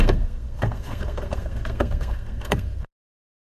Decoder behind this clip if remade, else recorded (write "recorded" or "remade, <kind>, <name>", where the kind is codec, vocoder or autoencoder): remade, codec, SNAC